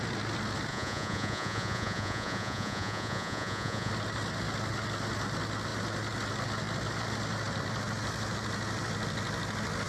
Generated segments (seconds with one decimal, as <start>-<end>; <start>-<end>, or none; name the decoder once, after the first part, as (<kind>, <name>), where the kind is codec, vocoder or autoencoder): 0.7-3.9 (vocoder, Vocos)